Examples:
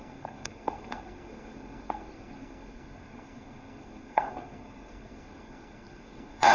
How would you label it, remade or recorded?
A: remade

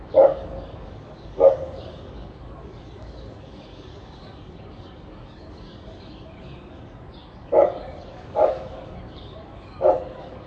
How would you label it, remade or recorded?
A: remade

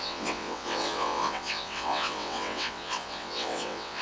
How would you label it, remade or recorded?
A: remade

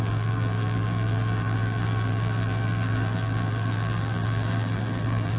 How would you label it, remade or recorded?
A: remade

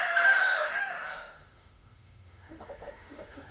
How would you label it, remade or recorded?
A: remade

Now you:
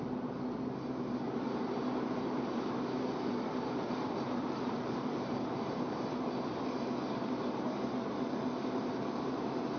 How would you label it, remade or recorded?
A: remade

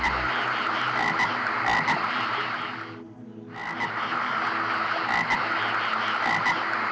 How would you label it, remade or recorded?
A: recorded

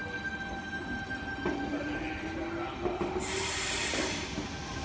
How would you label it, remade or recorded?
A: recorded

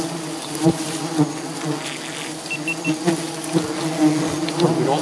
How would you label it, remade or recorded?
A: recorded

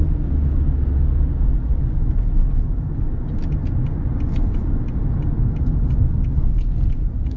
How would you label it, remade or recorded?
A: recorded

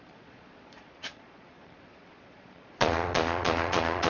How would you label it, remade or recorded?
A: remade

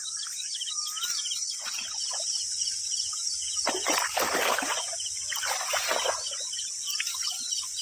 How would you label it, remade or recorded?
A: recorded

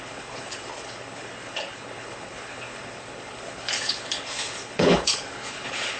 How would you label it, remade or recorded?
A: remade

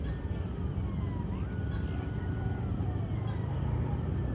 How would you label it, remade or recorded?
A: recorded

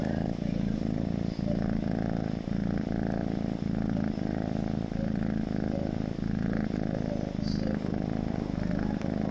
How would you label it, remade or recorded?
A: recorded